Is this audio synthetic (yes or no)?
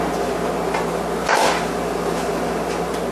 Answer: no